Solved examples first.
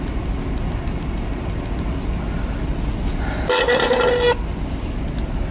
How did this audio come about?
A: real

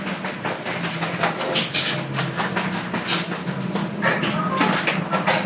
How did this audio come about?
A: real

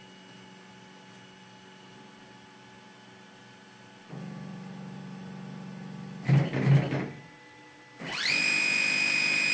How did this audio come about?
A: real